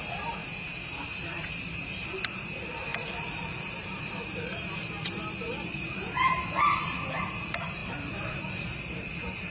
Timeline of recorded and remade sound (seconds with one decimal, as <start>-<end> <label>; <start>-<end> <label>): 0.0-0.4 remade; 0.4-1.0 recorded; 1.0-9.5 remade